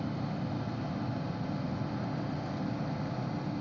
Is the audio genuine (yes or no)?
yes